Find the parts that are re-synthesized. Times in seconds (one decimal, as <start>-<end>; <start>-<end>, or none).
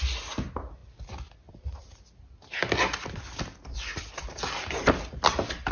none